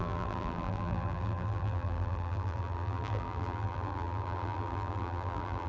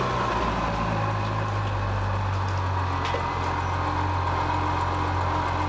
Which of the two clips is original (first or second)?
second